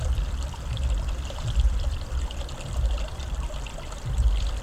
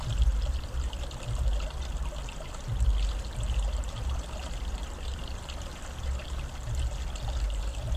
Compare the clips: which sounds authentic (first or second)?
second